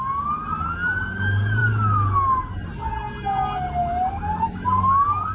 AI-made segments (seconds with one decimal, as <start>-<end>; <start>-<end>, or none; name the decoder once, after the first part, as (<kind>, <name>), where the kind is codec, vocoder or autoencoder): none